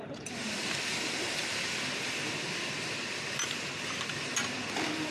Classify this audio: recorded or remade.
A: recorded